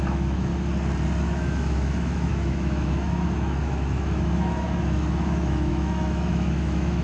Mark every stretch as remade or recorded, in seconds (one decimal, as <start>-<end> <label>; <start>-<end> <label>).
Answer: 0.0-0.5 remade; 0.5-1.2 recorded; 1.2-7.0 remade